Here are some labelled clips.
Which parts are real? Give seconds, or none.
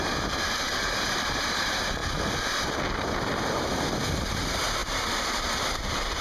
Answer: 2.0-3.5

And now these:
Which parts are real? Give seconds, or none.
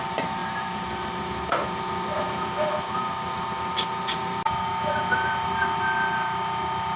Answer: 0.0-7.0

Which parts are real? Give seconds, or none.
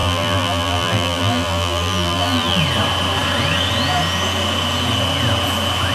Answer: 2.6-5.9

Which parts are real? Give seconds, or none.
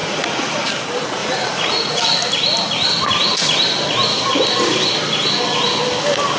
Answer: 0.7-1.2; 2.0-6.4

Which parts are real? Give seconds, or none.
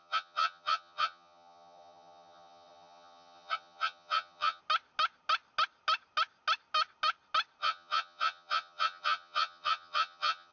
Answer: 4.6-7.6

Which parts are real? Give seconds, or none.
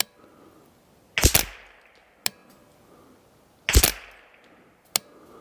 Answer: 0.0-5.4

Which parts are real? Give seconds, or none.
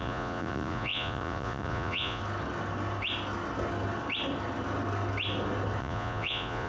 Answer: 2.2-5.8